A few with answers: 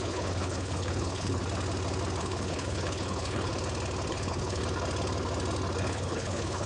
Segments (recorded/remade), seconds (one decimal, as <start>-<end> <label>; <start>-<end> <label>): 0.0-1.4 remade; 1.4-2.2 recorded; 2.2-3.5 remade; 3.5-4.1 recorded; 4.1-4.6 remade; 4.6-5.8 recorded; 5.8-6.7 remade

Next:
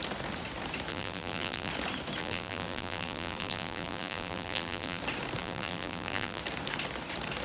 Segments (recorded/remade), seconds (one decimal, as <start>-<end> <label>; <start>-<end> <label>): 0.0-0.9 recorded; 0.9-1.7 remade; 1.7-2.2 recorded; 2.2-5.0 remade; 5.0-5.4 recorded; 5.4-6.4 remade; 6.4-7.4 recorded

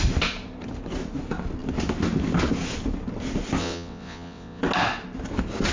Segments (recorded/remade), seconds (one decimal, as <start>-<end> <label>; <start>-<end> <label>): 0.0-3.6 recorded; 3.6-4.6 remade; 4.6-5.7 recorded

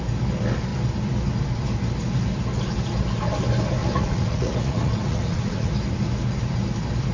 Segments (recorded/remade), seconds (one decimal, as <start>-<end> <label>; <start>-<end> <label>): 0.0-3.8 recorded; 3.8-5.7 remade; 5.7-7.1 recorded

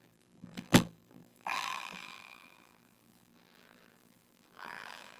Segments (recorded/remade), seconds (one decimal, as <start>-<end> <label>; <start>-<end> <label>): 0.0-5.2 remade

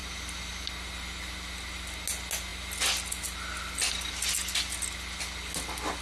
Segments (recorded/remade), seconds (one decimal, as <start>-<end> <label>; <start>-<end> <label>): 0.0-6.0 recorded

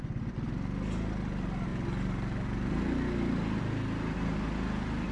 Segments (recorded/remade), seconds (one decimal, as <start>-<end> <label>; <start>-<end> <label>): 0.0-5.1 recorded

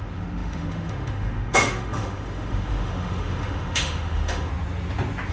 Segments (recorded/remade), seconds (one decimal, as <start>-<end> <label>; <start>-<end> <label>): 0.0-4.5 remade; 4.5-5.3 recorded